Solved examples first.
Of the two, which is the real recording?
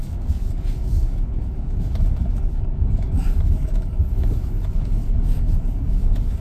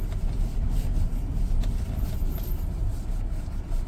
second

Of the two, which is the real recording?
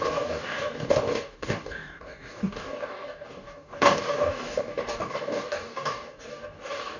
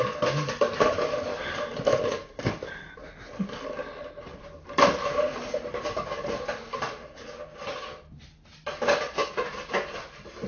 second